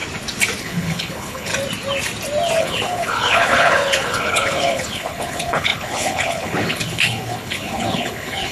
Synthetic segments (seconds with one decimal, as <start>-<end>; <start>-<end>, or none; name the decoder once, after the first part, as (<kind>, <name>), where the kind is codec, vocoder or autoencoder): 0.6-1.5 (codec, HILCodec); 2.6-8.5